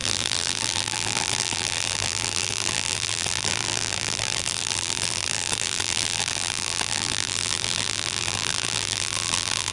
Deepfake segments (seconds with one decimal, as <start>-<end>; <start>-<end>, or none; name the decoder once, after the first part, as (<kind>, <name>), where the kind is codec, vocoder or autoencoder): 0.0-9.7 (vocoder, BigVGAN v2)